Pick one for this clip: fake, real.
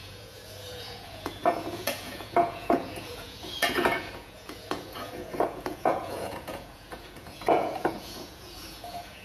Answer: fake